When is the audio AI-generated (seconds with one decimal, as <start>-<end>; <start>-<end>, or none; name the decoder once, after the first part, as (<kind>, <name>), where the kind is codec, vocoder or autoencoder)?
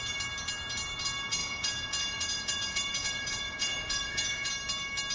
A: 1.4-4.5 (vocoder, Vocos)